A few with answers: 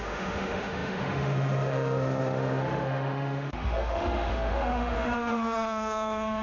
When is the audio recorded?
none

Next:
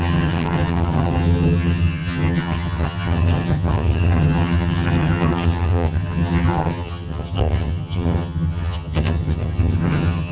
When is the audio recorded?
none

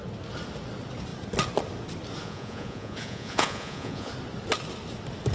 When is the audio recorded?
0.0-2.2; 4.1-5.3